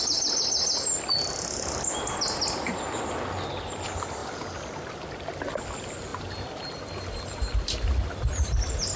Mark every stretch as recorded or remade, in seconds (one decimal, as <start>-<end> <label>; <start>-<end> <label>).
0.0-9.0 recorded